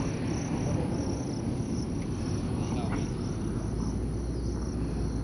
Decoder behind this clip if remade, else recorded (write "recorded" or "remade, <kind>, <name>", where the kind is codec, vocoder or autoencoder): recorded